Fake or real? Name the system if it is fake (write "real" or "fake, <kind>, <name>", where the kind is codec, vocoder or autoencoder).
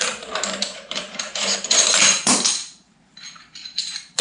fake, vocoder, BigVGAN v2